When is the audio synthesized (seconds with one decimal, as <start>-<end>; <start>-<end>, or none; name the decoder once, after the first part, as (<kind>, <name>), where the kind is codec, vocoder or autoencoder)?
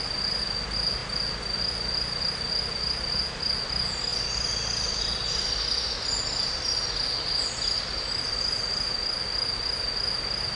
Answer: none